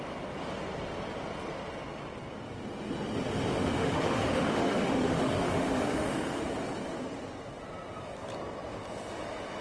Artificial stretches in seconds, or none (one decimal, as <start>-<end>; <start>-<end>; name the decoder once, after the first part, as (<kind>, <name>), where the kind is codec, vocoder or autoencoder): 3.5-6.4 (autoencoder, DAC-VAE)